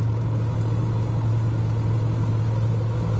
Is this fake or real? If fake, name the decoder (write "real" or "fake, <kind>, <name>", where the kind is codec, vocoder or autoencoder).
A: real